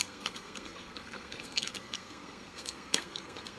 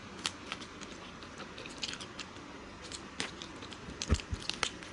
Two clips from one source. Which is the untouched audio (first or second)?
second